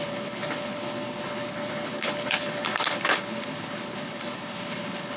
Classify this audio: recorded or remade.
remade